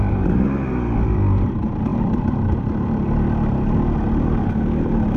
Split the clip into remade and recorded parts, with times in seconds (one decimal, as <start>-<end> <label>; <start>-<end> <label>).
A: 0.0-1.9 recorded; 1.9-3.8 remade; 3.8-5.2 recorded